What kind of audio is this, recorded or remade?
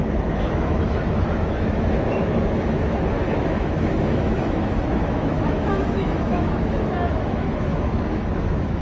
remade